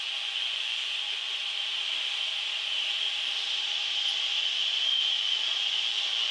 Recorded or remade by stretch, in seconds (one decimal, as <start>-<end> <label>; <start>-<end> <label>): 0.0-1.4 remade; 1.4-5.2 recorded; 5.2-6.3 remade